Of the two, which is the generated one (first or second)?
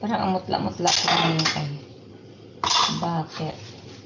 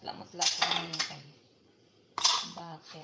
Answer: second